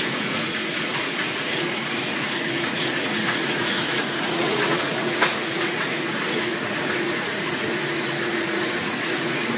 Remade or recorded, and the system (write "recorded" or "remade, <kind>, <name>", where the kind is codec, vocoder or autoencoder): remade, vocoder, Vocos